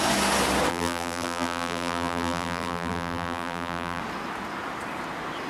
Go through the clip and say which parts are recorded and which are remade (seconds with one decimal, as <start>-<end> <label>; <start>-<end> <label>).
0.0-0.7 recorded; 0.7-4.0 remade; 4.0-5.5 recorded